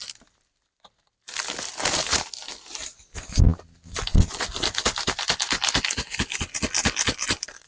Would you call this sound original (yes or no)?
yes